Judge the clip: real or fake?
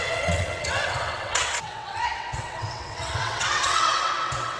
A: fake